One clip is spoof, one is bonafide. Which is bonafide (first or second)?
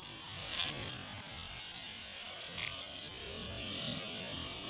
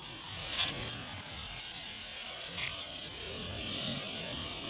first